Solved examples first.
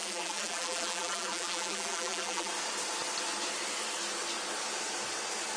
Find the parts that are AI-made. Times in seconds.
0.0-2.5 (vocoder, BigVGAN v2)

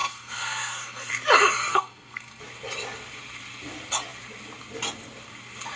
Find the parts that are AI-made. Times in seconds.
0.0-1.1 (codec, SNAC); 1.7-2.4